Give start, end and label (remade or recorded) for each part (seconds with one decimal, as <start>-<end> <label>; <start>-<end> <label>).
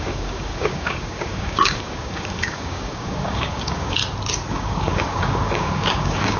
0.0-4.0 remade; 4.0-4.5 recorded; 4.5-6.4 remade